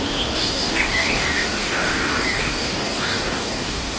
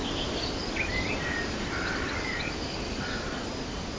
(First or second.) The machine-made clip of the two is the first